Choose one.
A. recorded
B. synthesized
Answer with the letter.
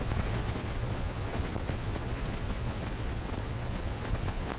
B